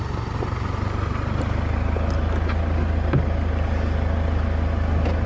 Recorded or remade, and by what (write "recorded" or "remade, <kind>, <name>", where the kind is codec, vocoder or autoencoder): recorded